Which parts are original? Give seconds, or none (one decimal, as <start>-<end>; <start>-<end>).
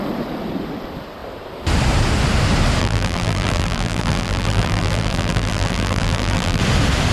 0.0-2.8; 6.6-7.1